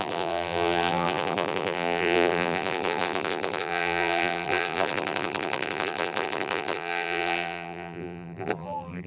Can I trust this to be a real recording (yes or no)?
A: no